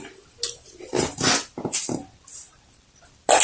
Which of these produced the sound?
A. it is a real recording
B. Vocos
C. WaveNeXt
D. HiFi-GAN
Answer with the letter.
A